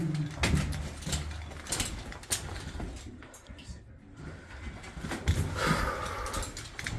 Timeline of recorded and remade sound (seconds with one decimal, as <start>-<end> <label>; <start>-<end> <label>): 0.0-7.0 recorded